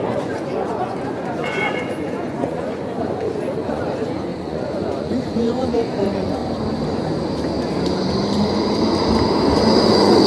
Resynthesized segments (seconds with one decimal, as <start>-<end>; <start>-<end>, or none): 0.0-6.4; 9.9-10.3